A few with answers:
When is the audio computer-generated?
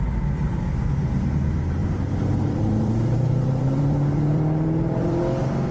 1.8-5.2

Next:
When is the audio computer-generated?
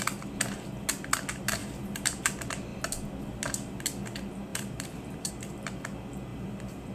1.6-2.2; 4.5-5.3; 6.3-6.9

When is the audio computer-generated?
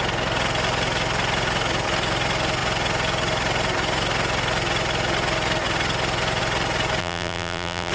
7.0-7.9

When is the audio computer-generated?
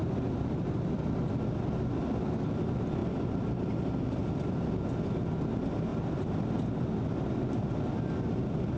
0.0-1.6; 5.9-7.7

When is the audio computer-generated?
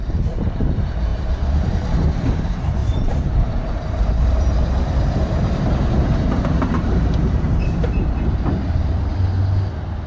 0.0-9.1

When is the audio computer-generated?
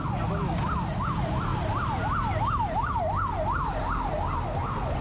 none